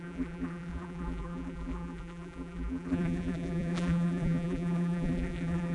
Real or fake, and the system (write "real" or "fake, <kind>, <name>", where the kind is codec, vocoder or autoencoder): fake, vocoder, BigVGAN v2